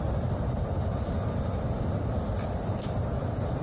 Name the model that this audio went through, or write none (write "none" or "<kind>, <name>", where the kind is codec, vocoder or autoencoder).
none